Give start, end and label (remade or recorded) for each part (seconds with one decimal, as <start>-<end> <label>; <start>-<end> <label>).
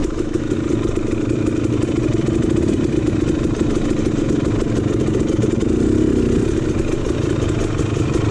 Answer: 0.0-0.5 remade; 0.5-8.3 recorded